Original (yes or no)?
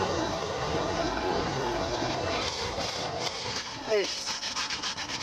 no